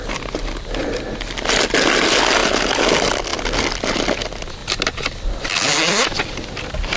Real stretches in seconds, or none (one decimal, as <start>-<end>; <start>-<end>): 0.0-7.0